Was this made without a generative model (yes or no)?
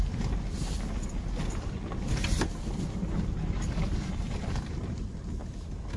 yes